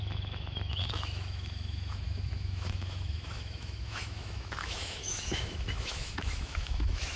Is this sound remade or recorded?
remade